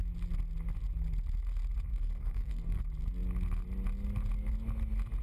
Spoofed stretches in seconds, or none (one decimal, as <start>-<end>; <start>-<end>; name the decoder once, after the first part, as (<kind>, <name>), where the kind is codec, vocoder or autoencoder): 1.9-2.8 (codec, SNAC)